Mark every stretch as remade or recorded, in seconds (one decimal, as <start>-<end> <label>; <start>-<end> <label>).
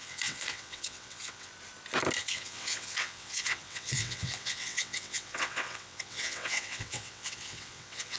0.0-1.5 remade; 1.5-2.2 recorded; 2.2-8.2 remade